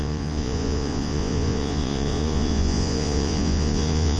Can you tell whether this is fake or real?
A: fake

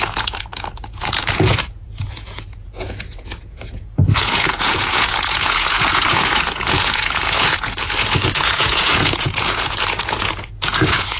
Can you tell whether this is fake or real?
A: fake